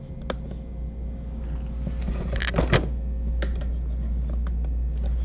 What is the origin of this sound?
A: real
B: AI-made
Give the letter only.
A